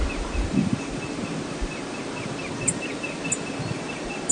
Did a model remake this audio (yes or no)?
no